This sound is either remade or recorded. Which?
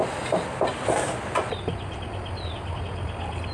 recorded